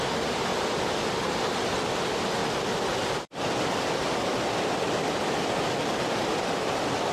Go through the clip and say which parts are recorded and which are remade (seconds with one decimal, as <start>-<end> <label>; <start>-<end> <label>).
0.0-7.1 recorded